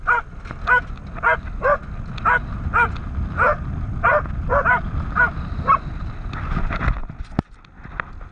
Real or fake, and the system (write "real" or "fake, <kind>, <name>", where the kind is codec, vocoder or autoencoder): real